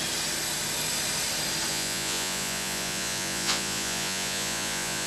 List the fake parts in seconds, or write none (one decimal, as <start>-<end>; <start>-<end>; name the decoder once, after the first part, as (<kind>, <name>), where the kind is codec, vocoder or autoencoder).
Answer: 1.7-5.1 (vocoder, Vocos)